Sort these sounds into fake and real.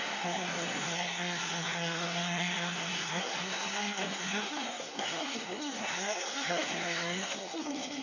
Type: fake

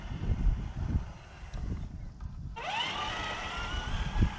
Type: real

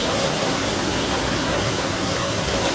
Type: fake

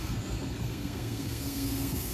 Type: fake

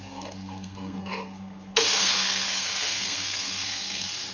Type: fake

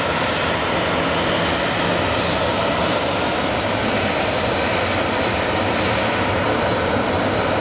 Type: real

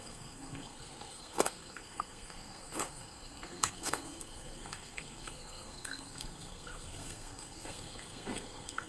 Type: fake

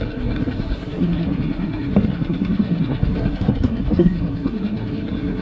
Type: fake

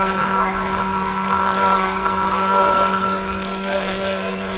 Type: fake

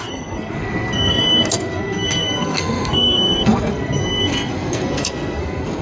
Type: fake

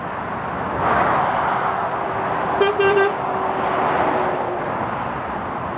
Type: real